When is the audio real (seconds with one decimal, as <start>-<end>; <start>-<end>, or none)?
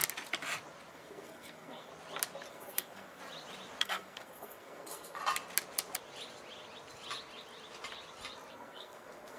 0.0-0.9; 1.9-2.5; 3.2-3.8; 5.2-8.5